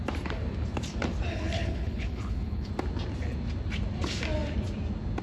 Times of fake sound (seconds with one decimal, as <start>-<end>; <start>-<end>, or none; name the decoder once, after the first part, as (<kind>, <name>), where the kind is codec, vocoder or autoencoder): 1.3-2.7 (codec, HILCodec)